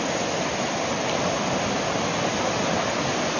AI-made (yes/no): no